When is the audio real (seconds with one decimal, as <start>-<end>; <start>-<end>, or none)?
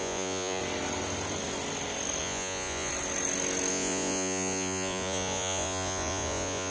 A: 0.6-2.2; 2.9-3.7